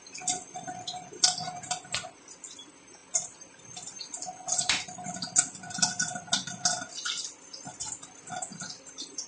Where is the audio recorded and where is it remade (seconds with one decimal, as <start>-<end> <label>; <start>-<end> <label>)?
0.0-9.3 recorded